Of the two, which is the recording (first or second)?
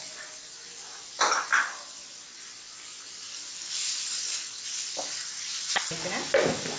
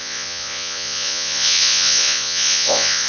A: first